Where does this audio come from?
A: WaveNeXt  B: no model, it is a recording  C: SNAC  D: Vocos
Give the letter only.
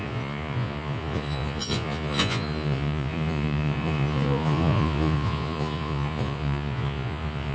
D